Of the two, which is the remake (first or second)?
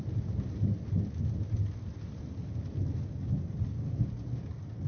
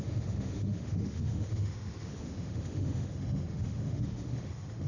second